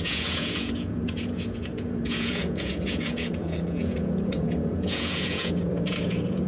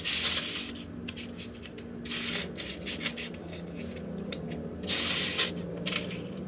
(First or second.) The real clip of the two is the second